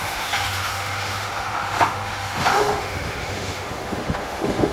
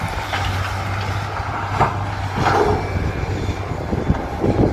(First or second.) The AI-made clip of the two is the first